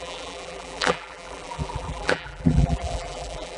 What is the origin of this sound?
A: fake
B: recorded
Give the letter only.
A